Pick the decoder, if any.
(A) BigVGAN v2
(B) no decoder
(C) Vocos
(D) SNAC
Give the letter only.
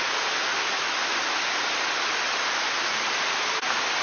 B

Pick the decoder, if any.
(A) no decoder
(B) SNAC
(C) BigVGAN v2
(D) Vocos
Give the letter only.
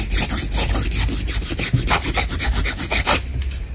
A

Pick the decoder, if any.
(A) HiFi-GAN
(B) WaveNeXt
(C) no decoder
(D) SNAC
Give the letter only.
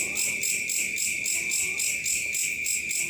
C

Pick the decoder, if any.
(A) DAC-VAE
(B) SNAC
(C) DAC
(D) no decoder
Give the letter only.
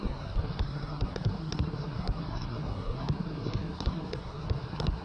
B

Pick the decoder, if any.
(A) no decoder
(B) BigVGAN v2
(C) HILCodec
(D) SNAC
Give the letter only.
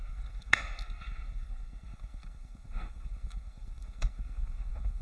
D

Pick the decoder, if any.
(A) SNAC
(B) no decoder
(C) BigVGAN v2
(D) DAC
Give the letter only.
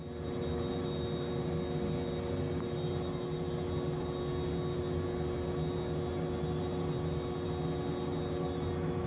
B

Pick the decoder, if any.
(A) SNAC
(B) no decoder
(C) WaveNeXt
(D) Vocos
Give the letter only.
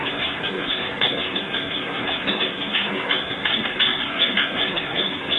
A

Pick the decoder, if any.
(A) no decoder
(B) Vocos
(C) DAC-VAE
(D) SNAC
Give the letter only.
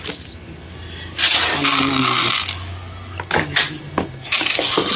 A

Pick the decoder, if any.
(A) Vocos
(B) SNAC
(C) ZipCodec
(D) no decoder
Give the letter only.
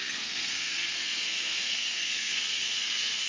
B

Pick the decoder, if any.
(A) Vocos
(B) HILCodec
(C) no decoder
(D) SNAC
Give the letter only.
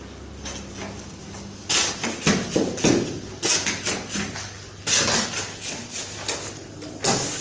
C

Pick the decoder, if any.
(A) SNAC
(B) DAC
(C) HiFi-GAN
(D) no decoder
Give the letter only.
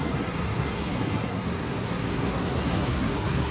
A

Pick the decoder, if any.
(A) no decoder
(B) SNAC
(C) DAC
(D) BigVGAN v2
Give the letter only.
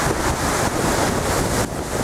A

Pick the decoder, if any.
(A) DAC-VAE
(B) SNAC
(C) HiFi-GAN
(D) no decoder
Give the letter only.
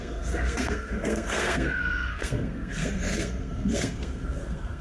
B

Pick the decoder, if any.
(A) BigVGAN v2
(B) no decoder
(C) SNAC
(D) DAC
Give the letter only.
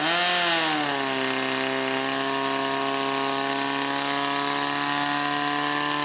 B